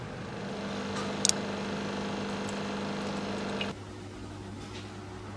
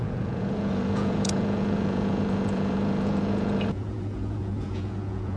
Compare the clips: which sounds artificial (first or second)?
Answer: second